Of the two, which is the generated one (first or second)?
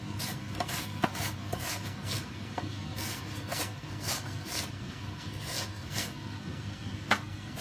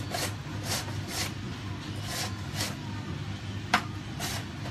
first